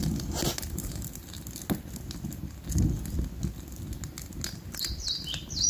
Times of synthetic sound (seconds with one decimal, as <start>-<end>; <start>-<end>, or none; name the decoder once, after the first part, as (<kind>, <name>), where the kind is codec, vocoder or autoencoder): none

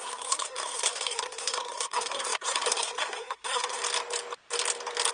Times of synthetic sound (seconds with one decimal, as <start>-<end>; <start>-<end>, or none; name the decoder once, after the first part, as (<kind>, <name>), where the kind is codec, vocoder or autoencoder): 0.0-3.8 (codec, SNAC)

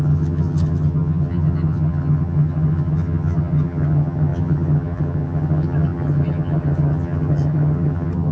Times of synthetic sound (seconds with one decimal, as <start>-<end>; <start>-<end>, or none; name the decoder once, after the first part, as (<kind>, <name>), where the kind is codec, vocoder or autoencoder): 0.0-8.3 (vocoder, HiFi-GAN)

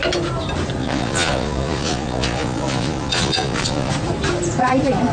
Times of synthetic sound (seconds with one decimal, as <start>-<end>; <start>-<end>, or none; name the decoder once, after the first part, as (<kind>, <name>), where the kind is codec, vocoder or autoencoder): 0.8-3.9 (vocoder, Vocos)

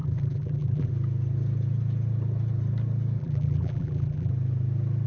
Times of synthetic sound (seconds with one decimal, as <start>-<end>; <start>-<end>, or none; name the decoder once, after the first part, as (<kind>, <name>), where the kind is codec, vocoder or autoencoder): 0.0-0.9 (vocoder, BigVGAN v2); 3.2-4.3

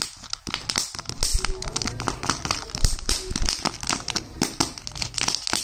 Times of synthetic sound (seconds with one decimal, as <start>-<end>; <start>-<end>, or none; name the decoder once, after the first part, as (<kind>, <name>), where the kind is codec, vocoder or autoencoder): 1.3-4.1 (vocoder, BigVGAN v2)

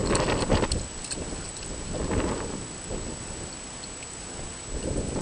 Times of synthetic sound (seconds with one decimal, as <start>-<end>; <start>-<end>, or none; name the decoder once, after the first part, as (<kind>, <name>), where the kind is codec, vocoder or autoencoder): none

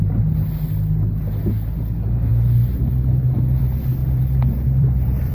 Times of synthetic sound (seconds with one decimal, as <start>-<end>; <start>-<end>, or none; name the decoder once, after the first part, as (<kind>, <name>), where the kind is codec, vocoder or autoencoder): 4.0-5.3 (vocoder, BigVGAN v2)